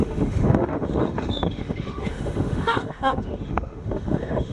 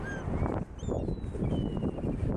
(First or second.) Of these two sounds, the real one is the second